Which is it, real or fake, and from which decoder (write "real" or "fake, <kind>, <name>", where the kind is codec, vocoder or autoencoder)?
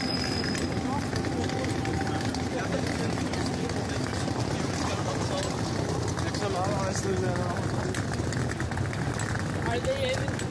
real